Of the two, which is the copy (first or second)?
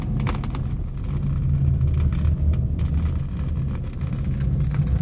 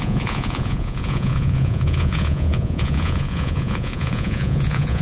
second